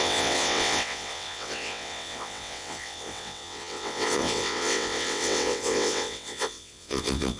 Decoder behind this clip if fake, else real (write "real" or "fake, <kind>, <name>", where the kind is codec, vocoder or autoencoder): fake, vocoder, WaveNeXt